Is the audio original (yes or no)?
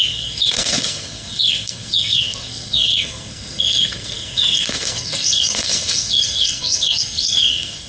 no